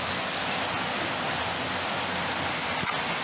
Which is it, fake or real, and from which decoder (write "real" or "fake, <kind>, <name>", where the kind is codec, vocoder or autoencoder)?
real